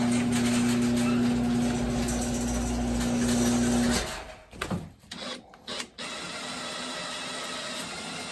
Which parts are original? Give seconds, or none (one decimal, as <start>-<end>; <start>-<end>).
0.0-8.3